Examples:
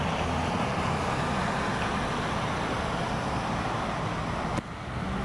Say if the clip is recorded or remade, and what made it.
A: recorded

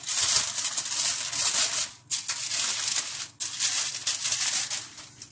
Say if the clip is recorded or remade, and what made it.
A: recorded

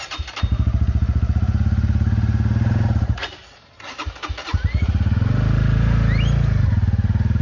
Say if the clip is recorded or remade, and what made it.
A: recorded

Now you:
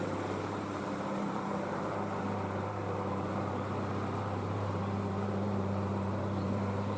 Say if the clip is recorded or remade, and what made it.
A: remade, vocoder, BigVGAN v2